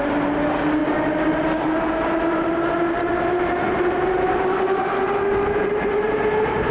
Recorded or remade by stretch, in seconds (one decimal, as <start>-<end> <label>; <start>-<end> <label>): 0.0-6.7 recorded